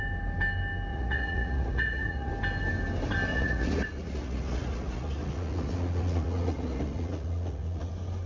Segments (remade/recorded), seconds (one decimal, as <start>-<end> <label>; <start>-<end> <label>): 0.0-0.9 recorded; 0.9-2.3 remade; 2.3-3.3 recorded; 3.3-7.9 remade; 7.9-8.3 recorded